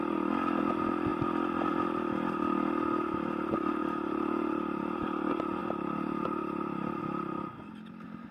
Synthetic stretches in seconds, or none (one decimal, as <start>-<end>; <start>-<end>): 3.8-5.0; 5.6-7.0

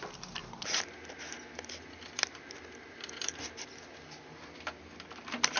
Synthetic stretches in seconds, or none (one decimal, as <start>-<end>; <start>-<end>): none

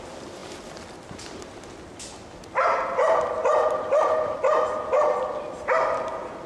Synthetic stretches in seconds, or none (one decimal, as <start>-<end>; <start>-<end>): none

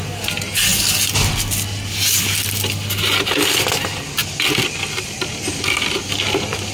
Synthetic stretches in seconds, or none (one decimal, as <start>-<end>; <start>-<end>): none

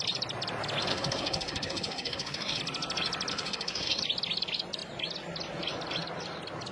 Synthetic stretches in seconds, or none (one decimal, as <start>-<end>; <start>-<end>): 0.9-2.6; 3.3-4.0

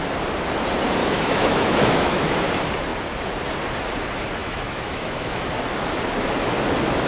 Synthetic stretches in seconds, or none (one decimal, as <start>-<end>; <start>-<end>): 1.0-2.4; 4.4-5.6

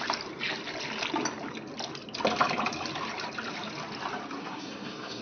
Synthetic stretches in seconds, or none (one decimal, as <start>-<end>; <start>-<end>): 4.4-5.2

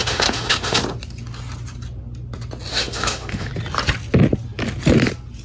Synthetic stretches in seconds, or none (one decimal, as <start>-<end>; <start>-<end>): 0.0-0.8; 2.7-3.5